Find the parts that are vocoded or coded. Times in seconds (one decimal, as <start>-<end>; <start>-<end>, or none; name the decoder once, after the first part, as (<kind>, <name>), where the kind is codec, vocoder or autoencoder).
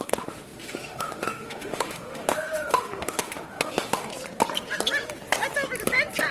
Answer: 0.0-4.1 (autoencoder, DAC-VAE)